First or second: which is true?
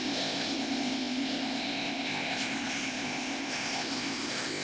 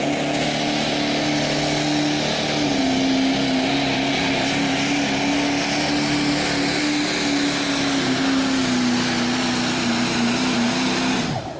second